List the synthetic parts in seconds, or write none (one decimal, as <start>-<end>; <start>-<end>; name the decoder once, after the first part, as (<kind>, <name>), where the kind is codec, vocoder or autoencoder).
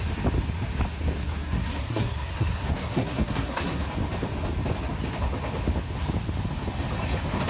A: 1.2-3.8 (codec, SNAC)